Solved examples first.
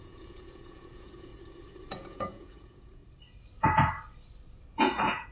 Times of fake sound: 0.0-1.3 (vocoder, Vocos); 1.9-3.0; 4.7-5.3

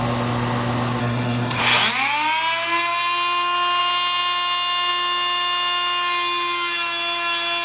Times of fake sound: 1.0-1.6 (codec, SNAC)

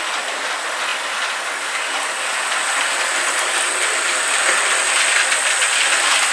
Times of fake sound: none